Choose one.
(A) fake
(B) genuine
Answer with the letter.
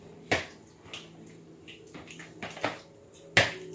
B